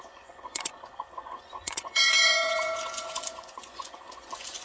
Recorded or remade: remade